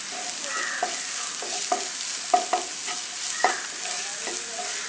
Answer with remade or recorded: recorded